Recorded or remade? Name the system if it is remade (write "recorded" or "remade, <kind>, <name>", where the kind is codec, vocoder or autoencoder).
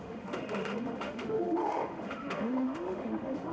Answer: remade, autoencoder, DAC-VAE